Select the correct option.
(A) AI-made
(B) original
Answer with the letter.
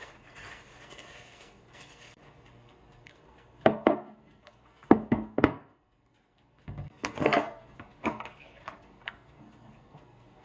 A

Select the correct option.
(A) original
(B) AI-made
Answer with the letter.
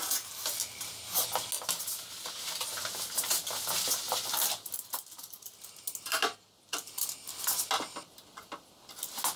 A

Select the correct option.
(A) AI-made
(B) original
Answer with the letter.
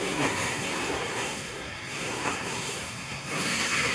A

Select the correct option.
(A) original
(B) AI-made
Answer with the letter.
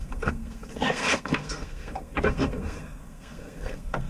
B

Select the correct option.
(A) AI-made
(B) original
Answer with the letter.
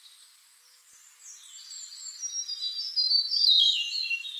B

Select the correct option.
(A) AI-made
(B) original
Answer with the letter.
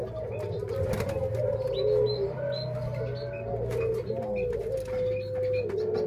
B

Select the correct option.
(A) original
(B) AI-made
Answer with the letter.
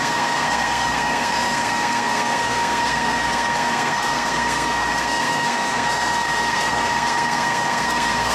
B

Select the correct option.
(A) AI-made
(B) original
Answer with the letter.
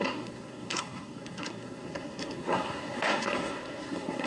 A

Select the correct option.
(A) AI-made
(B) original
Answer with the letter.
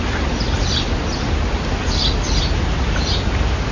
B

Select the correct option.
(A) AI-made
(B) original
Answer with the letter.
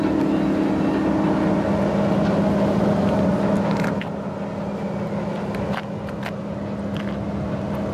B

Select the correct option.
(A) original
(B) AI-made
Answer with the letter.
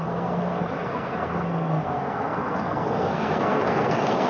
B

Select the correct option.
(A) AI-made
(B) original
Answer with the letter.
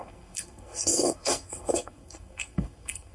A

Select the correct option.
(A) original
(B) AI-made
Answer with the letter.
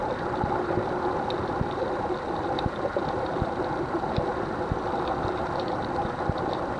A